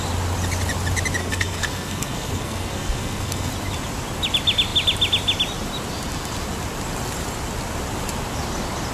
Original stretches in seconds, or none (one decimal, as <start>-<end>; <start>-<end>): 0.0-1.2; 3.5-8.9